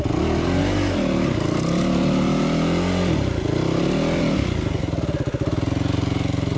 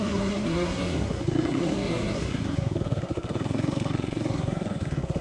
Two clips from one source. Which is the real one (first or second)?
first